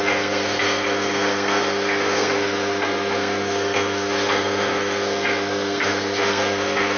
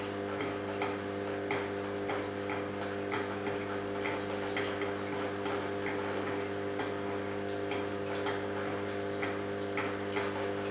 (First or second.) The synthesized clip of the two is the first